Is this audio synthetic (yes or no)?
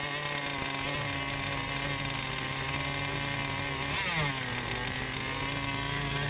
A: no